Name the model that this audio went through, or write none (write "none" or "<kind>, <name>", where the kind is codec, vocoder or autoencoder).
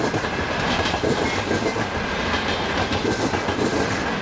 none